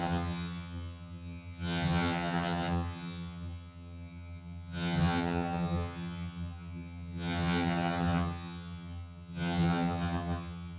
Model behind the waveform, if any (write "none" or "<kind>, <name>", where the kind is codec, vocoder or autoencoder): vocoder, HiFi-GAN